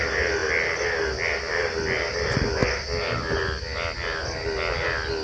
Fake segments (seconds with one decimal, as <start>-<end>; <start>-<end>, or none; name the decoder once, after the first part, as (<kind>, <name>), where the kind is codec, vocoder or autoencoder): none